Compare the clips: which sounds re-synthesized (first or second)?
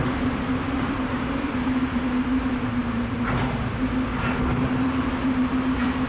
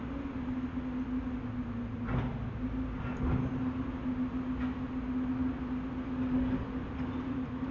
first